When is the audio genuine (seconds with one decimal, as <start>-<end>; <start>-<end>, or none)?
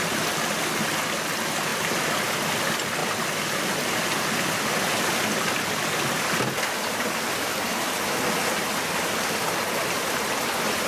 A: 0.0-1.7; 2.2-3.0; 4.6-10.9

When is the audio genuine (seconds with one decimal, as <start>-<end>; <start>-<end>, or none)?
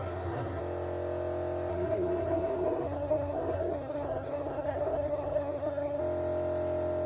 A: 0.6-1.7; 6.0-7.1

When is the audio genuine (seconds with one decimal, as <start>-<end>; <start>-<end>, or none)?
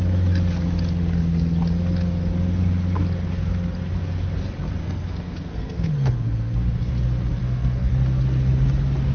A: 0.0-4.8; 6.9-7.4; 7.9-9.1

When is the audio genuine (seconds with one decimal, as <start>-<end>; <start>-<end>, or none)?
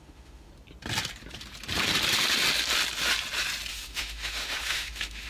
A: 0.5-3.7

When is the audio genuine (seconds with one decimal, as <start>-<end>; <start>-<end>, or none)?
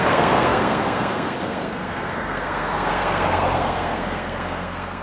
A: none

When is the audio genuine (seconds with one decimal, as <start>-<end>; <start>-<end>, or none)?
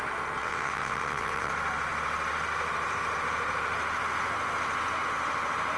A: 0.0-0.4; 1.5-5.8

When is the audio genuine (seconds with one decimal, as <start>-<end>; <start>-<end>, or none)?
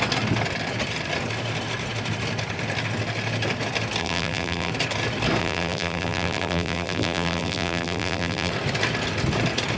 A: 0.0-4.0; 4.7-5.4; 8.5-9.8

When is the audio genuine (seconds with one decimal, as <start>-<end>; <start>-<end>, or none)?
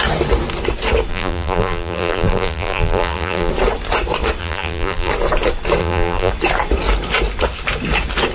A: 0.0-1.1; 3.5-4.4; 5.1-5.8; 6.3-8.3